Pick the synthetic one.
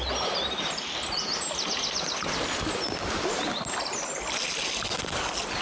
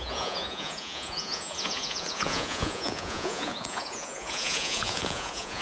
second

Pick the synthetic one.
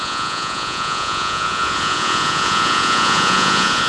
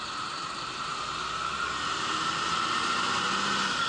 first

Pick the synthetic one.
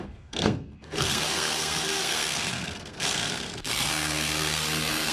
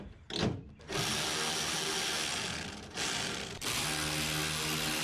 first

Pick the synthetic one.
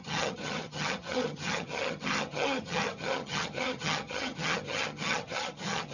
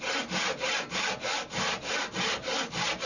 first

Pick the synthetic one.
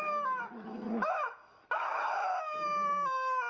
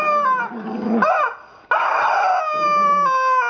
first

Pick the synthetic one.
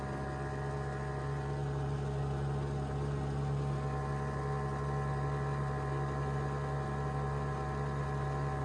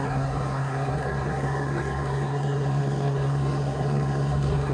second